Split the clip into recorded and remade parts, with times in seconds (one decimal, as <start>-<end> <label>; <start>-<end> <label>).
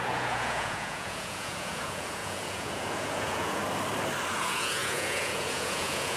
0.0-3.6 remade; 3.6-4.3 recorded; 4.3-6.2 remade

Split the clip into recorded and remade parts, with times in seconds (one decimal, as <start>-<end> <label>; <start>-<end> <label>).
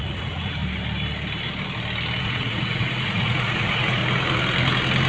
0.0-0.6 remade; 0.6-2.2 recorded; 2.2-4.0 remade; 4.0-5.1 recorded